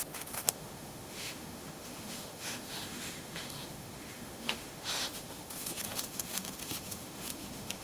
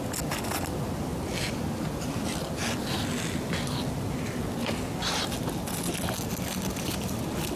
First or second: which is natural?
second